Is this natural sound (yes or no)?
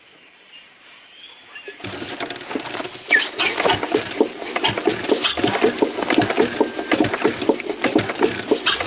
yes